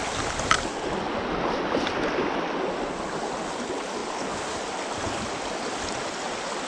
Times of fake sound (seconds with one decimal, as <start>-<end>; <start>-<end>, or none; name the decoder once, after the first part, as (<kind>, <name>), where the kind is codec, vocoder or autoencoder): 0.0-0.8 (vocoder, BigVGAN v2)